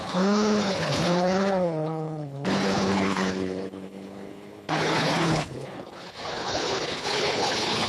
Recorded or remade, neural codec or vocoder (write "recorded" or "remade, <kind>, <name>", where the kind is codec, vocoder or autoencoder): remade, codec, HILCodec